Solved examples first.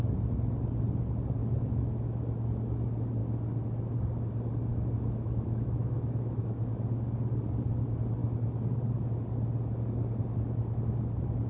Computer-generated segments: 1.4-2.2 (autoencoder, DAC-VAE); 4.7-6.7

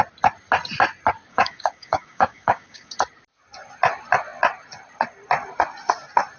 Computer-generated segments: 1.3-2.9 (codec, DAC)

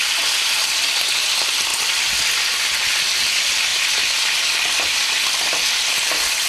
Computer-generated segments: none